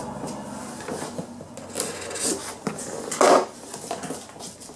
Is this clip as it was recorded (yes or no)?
yes